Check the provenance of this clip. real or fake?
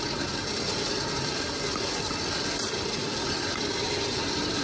fake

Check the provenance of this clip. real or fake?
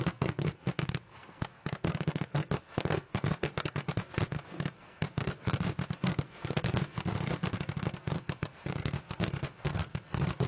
fake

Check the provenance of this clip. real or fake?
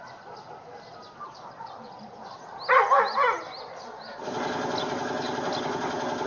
real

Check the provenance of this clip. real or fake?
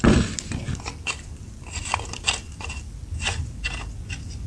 real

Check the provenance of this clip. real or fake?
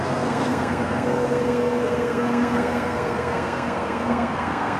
fake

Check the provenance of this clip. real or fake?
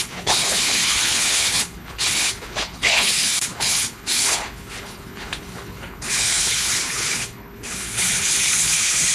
fake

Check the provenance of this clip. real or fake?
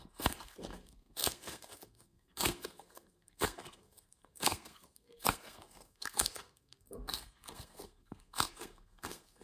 fake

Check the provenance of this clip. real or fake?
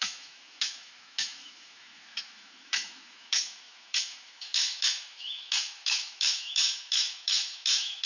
fake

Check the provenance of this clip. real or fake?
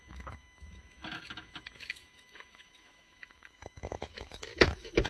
fake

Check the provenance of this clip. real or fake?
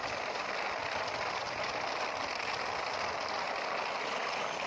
real